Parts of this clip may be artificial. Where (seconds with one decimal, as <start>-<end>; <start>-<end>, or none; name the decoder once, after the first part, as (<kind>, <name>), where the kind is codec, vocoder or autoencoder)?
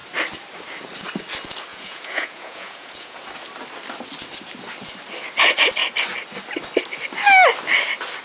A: 1.7-3.2 (vocoder, Vocos)